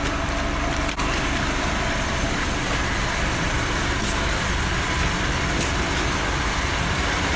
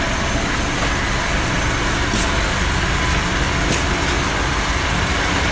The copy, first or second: first